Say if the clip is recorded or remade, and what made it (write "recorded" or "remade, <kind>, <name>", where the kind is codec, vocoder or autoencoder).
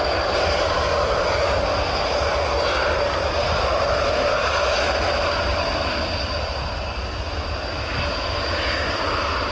recorded